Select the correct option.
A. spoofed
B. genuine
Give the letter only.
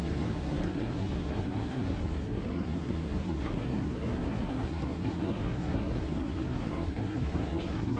A